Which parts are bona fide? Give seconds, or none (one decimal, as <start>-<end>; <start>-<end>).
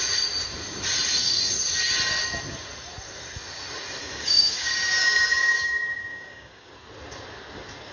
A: 0.0-4.0; 6.7-7.9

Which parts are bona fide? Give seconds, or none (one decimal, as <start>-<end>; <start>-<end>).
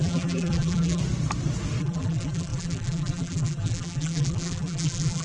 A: 1.0-1.8